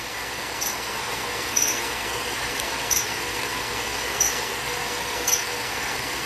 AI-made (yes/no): yes